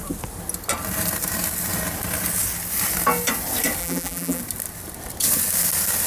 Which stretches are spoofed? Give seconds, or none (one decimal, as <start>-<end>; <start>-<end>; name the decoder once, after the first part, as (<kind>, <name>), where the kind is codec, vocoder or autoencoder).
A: 3.8-4.4 (vocoder, BigVGAN v2)